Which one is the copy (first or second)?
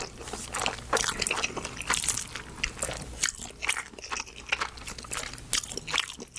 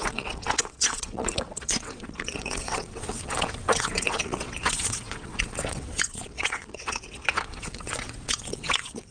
second